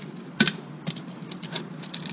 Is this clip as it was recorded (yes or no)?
yes